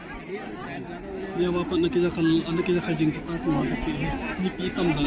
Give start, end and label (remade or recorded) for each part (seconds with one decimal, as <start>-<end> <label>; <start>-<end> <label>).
0.0-5.1 recorded